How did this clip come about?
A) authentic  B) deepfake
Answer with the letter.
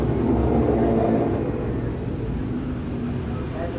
A